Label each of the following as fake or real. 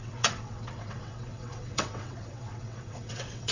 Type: fake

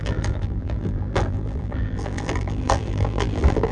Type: fake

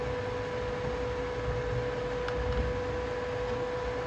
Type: real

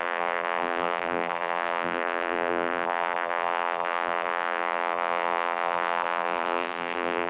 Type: fake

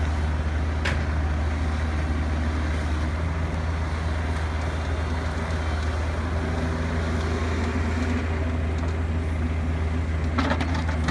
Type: real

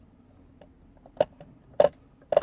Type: real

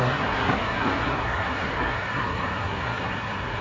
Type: fake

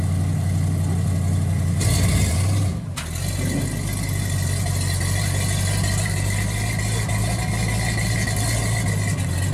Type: real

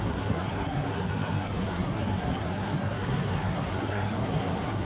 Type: fake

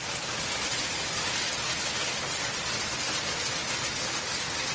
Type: real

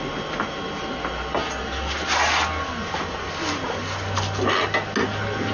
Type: real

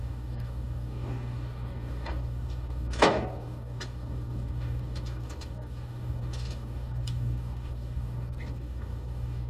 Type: fake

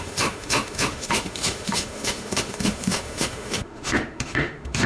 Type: fake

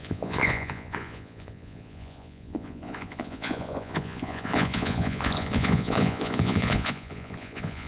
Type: fake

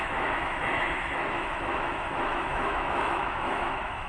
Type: fake